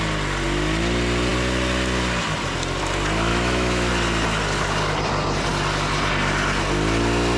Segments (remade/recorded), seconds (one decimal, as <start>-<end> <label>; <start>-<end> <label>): 0.0-3.3 recorded; 3.3-3.9 remade; 3.9-7.4 recorded